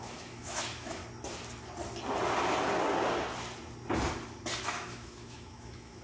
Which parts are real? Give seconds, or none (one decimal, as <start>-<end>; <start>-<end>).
1.0-4.6